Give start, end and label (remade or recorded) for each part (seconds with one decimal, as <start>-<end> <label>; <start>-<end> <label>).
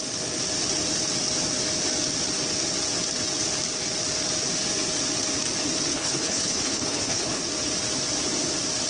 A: 0.0-5.9 recorded; 5.9-7.4 remade; 7.4-8.9 recorded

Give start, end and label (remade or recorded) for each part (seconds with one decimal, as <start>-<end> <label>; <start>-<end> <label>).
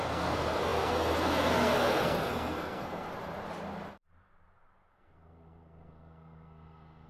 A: 0.0-3.1 remade; 3.1-4.9 recorded; 4.9-7.1 remade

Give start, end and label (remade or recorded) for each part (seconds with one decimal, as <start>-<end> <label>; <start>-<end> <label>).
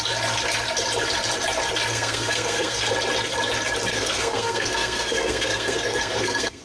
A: 0.0-1.9 recorded; 1.9-2.9 remade; 2.9-3.9 recorded; 3.9-6.6 remade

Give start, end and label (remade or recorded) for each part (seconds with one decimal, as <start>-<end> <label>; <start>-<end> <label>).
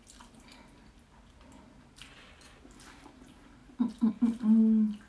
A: 0.0-5.1 recorded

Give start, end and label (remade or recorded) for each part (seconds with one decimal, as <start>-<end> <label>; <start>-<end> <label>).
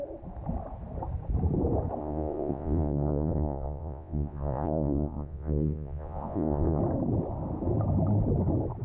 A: 0.0-2.0 recorded; 2.0-6.8 remade; 6.8-8.8 recorded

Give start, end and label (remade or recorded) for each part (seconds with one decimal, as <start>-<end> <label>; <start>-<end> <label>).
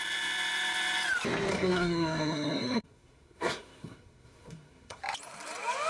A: 0.0-1.5 recorded; 1.5-5.0 remade; 5.0-5.9 recorded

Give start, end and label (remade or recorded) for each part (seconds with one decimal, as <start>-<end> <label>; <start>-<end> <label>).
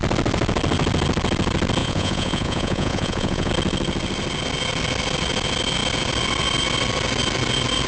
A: 0.0-1.8 recorded; 1.8-3.5 remade; 3.5-7.9 recorded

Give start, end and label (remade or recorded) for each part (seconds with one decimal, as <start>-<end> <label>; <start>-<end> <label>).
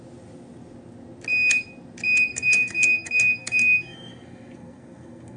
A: 0.0-2.3 recorded; 2.3-5.4 remade